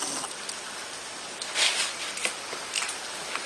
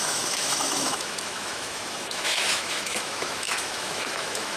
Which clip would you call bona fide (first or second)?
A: first